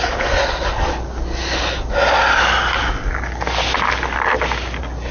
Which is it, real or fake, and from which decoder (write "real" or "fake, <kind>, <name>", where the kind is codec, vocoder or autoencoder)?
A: real